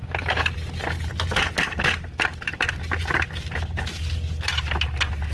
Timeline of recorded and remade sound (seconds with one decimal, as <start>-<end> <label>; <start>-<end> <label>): 0.0-1.1 remade; 1.1-5.3 recorded